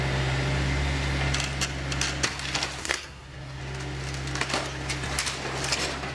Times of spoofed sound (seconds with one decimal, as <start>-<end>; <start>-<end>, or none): 2.8-3.6